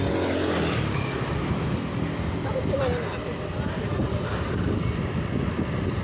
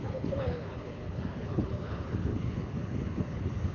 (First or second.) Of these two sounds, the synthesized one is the second